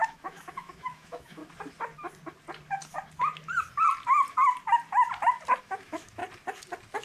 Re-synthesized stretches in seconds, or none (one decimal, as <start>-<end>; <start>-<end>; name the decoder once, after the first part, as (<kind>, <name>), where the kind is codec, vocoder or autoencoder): 0.0-1.4 (autoencoder, DAC-VAE); 5.6-6.2